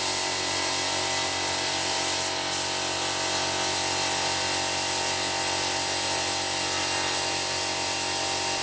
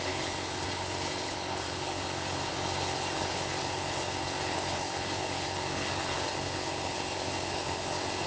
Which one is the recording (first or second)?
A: first